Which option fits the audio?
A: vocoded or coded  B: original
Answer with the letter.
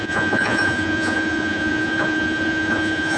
A